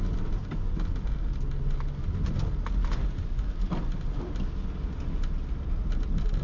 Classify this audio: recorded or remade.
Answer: recorded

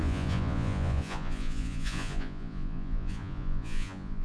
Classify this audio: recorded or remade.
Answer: remade